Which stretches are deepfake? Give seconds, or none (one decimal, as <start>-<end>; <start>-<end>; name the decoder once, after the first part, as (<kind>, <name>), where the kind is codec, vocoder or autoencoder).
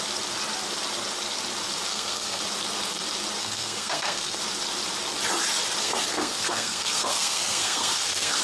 1.9-2.4 (codec, SNAC); 3.4-4.4; 5.8-8.4